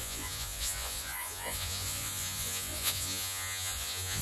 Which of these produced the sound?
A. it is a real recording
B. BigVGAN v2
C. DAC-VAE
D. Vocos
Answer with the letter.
D